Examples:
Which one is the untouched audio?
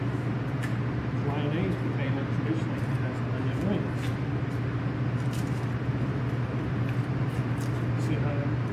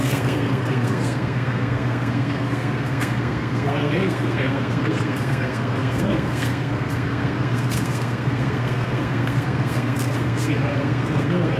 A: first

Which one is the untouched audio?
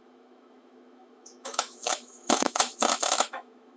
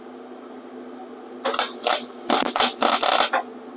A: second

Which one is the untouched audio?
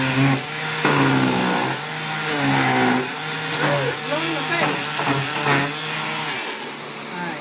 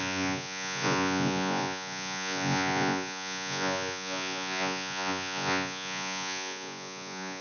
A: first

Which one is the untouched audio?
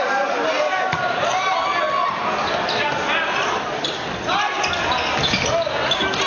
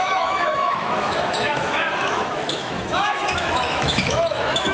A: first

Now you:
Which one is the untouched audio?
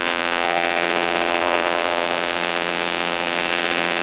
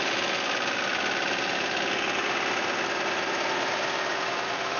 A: second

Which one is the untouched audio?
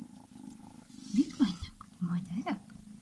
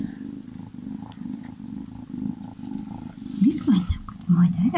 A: second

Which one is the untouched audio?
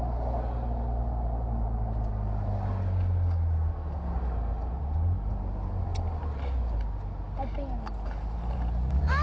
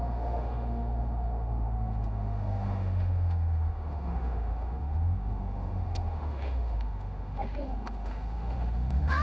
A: first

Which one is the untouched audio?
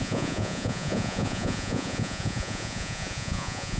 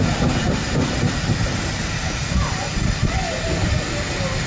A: second